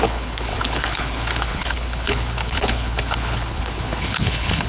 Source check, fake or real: fake